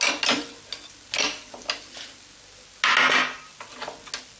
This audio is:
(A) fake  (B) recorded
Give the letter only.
B